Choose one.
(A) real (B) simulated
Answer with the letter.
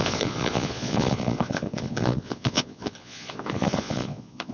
B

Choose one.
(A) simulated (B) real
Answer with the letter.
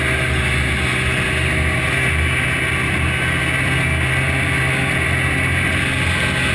B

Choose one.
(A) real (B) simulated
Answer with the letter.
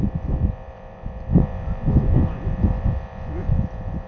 B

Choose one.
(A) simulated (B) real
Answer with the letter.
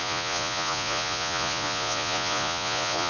A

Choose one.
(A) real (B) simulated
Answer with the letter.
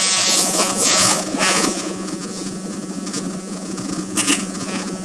B